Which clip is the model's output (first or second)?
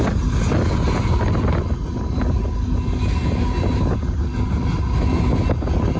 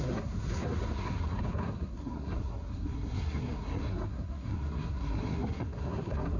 second